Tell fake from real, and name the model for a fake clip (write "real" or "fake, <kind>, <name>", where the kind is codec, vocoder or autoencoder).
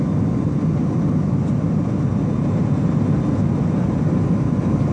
real